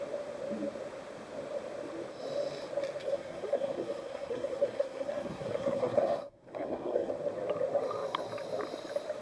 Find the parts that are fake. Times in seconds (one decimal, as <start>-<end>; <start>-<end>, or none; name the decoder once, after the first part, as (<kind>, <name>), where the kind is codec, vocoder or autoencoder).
3.0-7.1 (codec, SNAC)